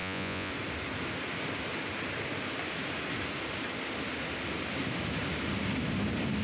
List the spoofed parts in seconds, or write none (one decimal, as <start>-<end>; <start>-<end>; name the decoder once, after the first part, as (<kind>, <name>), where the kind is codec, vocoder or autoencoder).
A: 0.0-0.5 (vocoder, Vocos)